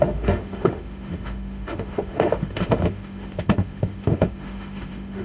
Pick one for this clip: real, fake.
fake